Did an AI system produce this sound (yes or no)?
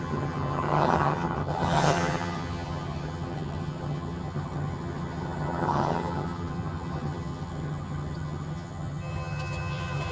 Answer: yes